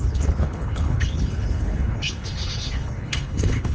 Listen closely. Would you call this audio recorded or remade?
remade